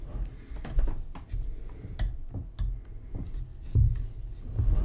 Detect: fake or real real